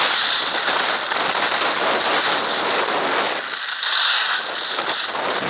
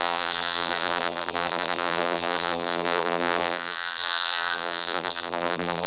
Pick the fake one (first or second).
second